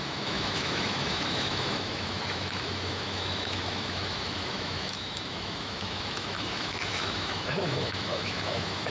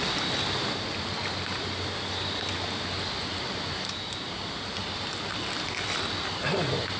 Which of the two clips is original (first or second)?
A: second